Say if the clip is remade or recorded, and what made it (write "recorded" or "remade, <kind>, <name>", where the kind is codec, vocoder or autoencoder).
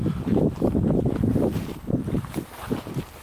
recorded